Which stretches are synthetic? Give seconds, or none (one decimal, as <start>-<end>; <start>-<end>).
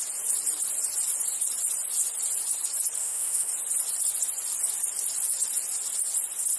3.0-3.5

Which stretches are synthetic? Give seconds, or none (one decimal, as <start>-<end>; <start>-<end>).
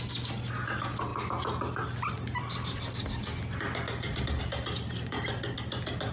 none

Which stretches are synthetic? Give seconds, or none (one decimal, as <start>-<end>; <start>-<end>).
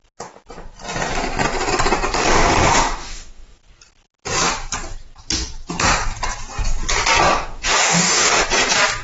2.2-3.6; 7.3-8.4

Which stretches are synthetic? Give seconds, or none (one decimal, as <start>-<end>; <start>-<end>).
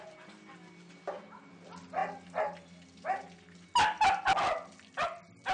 none